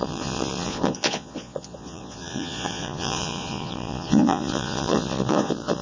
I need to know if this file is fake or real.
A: fake